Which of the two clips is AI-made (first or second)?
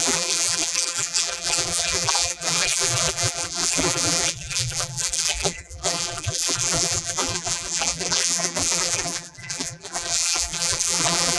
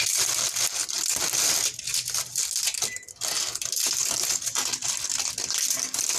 first